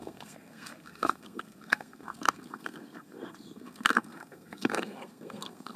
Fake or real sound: fake